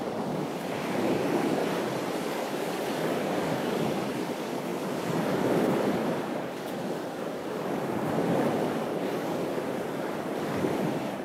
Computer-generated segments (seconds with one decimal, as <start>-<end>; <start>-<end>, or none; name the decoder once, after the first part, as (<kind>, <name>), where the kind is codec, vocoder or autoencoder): 0.0-1.6 (codec, DAC); 2.2-11.2